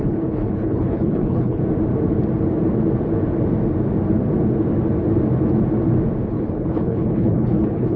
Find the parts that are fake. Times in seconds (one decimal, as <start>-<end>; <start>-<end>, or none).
0.0-1.6; 6.3-8.0